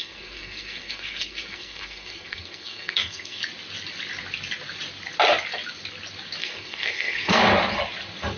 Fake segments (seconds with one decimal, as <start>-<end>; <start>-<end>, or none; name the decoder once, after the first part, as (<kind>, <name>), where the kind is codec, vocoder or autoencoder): 0.0-3.4 (codec, SNAC); 6.4-7.4